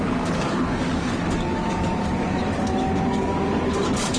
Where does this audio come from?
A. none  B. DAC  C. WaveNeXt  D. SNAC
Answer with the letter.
B